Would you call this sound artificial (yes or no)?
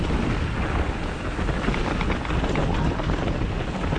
no